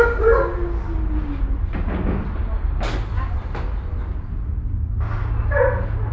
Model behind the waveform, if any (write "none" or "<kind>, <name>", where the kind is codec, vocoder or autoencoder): none